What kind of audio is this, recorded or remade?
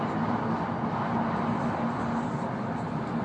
recorded